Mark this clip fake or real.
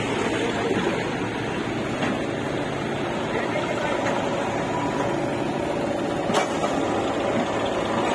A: real